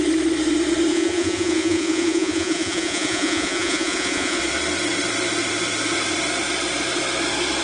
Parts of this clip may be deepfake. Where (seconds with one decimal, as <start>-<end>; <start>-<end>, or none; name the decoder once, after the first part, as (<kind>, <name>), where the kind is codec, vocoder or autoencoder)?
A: 0.9-4.4 (vocoder, Vocos)